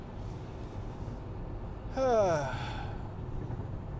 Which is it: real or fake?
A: real